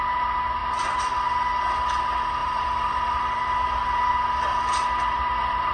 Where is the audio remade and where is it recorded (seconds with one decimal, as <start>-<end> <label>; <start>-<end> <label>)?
0.0-0.6 recorded; 0.6-1.1 remade; 1.1-2.4 recorded; 2.4-4.1 remade; 4.1-4.5 recorded; 4.5-5.7 remade